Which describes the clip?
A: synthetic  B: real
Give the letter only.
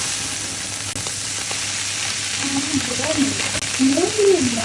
B